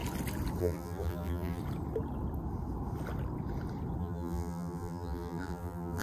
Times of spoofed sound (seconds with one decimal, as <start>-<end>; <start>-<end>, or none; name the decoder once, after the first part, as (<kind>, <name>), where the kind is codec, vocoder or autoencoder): 0.6-1.6 (vocoder, BigVGAN v2); 4.0-6.0